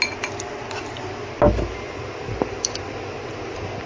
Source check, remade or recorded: recorded